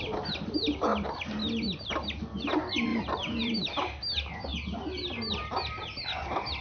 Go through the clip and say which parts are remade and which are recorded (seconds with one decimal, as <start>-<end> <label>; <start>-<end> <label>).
0.0-2.9 recorded; 2.9-3.7 remade; 3.7-6.6 recorded